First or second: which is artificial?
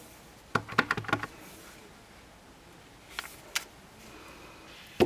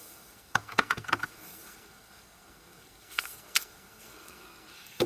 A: second